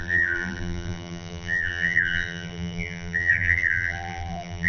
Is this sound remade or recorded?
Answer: remade